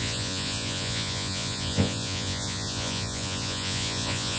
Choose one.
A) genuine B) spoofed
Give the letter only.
B